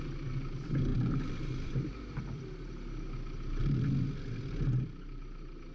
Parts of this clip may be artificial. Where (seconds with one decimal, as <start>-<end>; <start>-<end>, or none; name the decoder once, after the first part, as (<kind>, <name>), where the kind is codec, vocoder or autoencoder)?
0.9-2.0 (vocoder, BigVGAN v2)